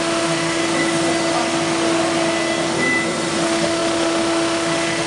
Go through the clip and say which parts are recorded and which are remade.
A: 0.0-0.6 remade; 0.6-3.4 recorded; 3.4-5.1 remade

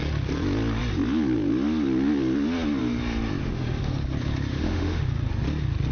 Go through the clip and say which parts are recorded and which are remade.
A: 0.0-3.4 recorded; 3.4-3.9 remade; 3.9-4.5 recorded; 4.5-5.1 remade; 5.1-5.9 recorded

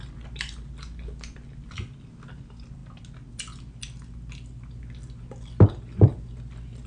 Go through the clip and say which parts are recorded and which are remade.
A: 0.0-6.9 recorded

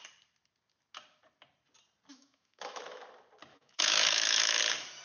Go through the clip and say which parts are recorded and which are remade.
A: 0.0-2.1 recorded; 2.1-2.8 remade; 2.8-3.5 recorded; 3.5-4.6 remade; 4.6-5.0 recorded

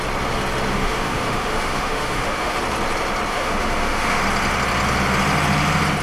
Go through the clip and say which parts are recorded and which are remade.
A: 0.0-0.7 recorded; 0.7-2.6 remade; 2.6-3.3 recorded; 3.3-4.2 remade; 4.2-6.0 recorded

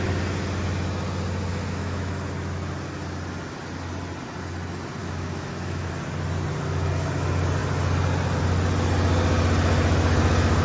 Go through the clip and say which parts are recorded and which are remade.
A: 0.0-1.5 recorded; 1.5-2.1 remade; 2.1-5.0 recorded; 5.0-5.9 remade; 5.9-10.6 recorded

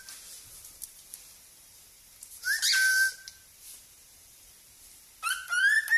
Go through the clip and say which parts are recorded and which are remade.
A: 0.0-6.0 recorded